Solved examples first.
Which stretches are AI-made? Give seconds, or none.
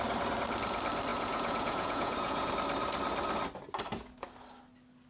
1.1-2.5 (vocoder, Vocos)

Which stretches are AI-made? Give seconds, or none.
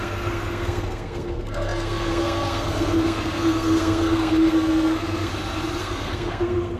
0.0-5.3 (codec, SNAC); 5.8-6.8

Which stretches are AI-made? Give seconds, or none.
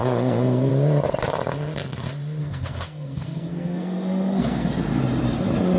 0.0-0.7 (codec, SNAC); 2.4-4.7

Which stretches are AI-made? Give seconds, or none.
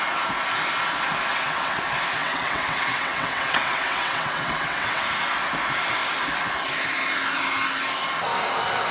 1.3-1.8 (vocoder, WaveNeXt); 2.2-5.0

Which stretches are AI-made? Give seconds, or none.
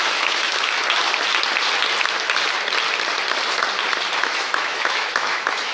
0.0-0.8 (autoencoder, DAC-VAE); 4.2-5.7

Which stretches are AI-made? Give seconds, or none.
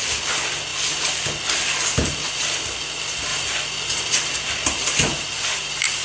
none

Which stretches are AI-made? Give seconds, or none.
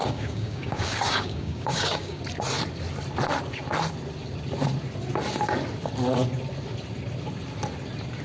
0.0-2.2 (codec, DAC)